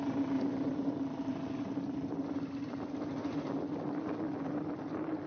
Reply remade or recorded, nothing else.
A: recorded